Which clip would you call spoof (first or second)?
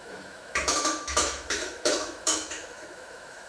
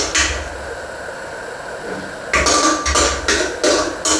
first